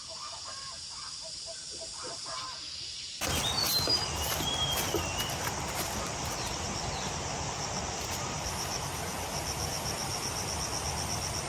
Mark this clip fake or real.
real